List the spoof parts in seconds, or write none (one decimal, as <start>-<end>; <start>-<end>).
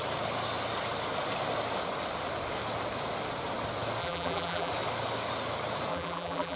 4.0-4.7; 5.9-6.6